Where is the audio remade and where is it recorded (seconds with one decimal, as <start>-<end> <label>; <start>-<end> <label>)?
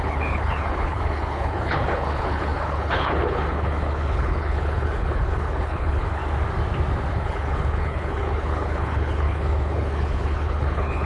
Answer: 0.0-6.2 remade; 6.2-7.1 recorded; 7.1-11.0 remade